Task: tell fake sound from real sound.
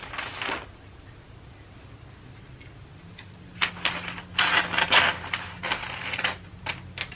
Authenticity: real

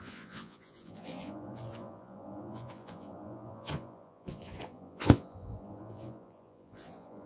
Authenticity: fake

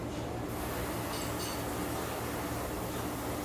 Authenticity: real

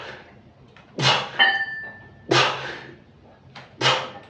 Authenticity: real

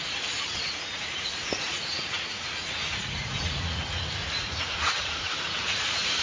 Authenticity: fake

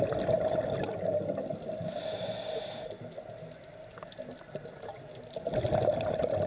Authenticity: real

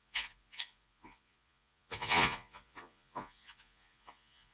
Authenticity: fake